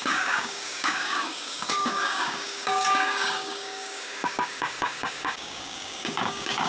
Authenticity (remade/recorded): remade